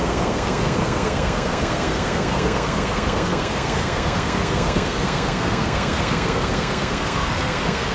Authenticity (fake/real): fake